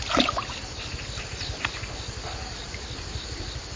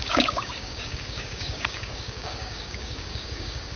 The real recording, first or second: first